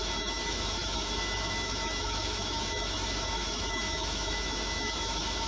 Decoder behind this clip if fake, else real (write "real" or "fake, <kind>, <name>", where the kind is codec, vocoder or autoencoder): fake, autoencoder, DAC-VAE